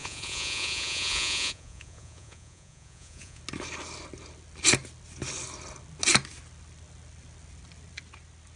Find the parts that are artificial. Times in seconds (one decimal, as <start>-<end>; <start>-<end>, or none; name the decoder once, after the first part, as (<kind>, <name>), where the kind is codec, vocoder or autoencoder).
0.0-3.4 (vocoder, Vocos)